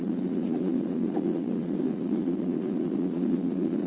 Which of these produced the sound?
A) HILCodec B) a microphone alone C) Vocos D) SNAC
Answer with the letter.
C